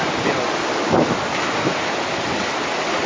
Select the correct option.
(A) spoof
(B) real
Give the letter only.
B